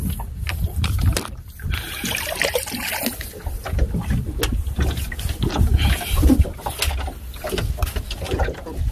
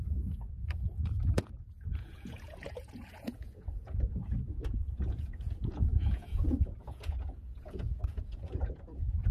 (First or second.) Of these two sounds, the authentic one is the first